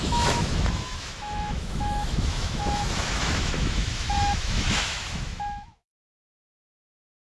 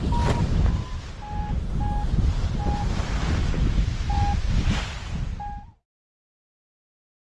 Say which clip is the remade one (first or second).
first